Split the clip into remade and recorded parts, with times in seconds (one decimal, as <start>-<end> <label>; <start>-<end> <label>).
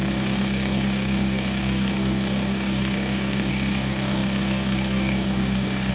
0.0-5.9 remade